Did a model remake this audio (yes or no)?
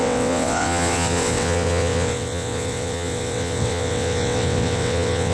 yes